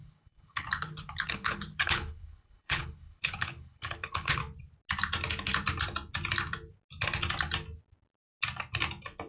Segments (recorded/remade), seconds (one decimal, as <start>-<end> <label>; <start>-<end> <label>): 0.0-4.4 remade; 4.4-9.3 recorded